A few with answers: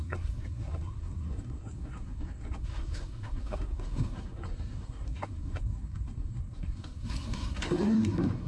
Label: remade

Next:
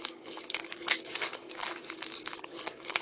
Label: remade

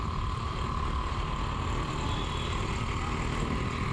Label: recorded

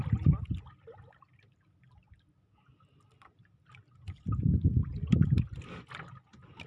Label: recorded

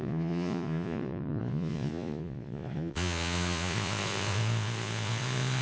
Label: remade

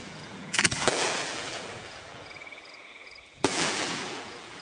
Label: remade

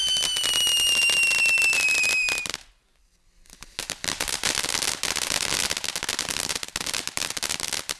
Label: recorded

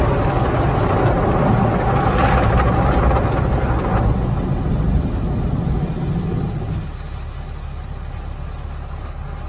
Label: recorded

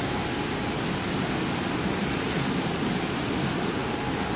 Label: recorded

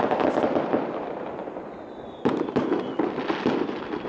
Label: recorded